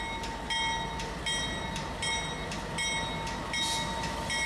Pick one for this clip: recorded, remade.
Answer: recorded